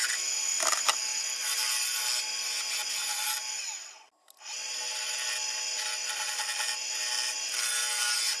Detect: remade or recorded recorded